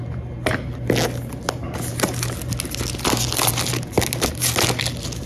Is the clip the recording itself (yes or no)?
yes